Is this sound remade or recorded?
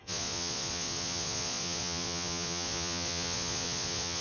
remade